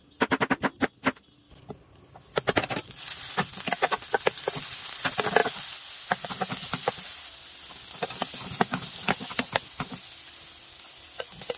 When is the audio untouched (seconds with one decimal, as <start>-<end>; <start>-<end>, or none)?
0.0-11.6